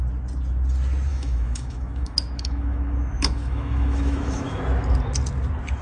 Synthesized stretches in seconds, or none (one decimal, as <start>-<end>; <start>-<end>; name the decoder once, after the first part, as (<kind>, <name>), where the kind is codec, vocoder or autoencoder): 1.1-4.6 (autoencoder, DAC-VAE)